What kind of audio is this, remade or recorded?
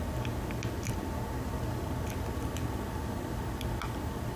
recorded